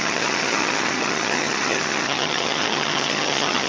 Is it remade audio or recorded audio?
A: remade